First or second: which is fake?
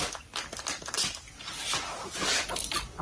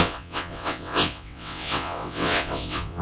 second